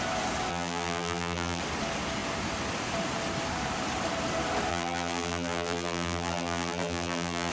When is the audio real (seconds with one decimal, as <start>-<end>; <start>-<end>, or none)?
0.0-0.5; 1.6-4.7